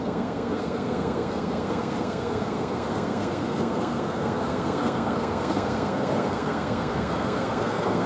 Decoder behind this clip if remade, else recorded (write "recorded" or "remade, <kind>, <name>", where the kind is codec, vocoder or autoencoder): remade, codec, SNAC